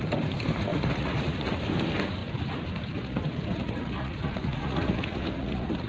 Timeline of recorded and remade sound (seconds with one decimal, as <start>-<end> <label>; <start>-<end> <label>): 0.0-0.7 recorded; 0.7-1.6 remade; 1.6-2.2 recorded; 2.2-5.9 remade